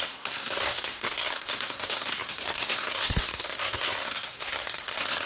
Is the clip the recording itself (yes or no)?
no